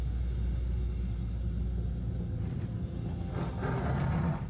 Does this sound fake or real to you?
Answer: real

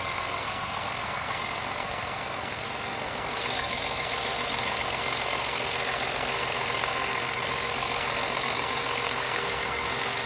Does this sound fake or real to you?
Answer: fake